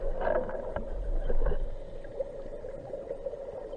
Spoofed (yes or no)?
no